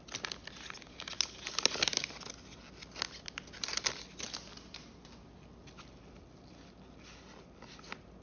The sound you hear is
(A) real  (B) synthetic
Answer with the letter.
A